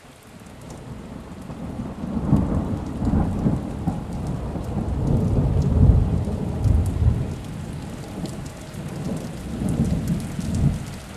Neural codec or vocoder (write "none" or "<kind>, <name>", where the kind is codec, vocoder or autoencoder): none